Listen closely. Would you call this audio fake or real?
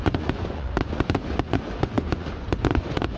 fake